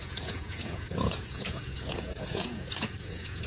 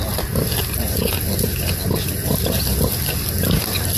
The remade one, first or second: first